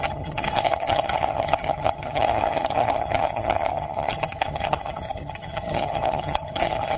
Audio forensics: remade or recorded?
remade